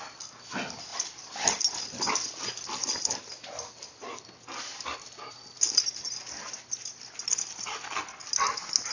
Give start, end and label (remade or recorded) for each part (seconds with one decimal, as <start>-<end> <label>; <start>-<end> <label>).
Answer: 0.0-8.9 recorded